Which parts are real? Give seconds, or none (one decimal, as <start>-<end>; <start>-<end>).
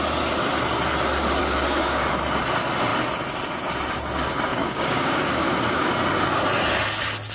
0.0-1.4; 2.1-4.5; 5.9-7.3